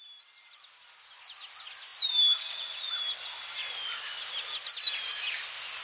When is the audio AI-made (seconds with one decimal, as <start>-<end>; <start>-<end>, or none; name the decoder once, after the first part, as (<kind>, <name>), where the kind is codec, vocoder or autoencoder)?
none